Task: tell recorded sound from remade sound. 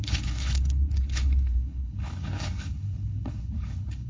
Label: remade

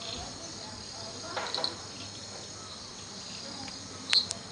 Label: recorded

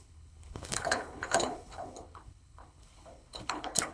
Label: remade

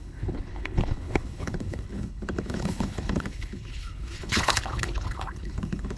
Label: remade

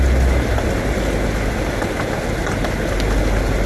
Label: recorded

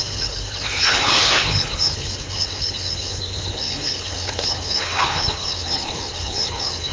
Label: remade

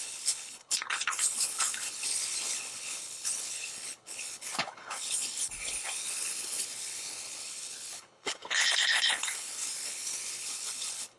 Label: remade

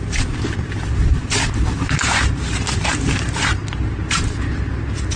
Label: recorded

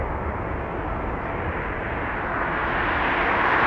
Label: recorded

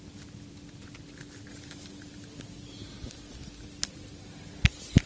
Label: recorded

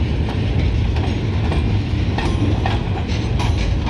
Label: recorded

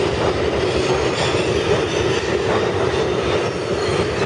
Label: recorded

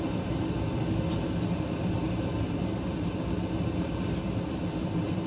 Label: recorded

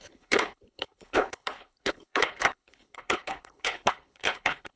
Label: remade